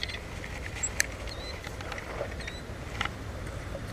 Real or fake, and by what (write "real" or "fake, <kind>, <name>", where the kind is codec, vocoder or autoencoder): fake, vocoder, BigVGAN v2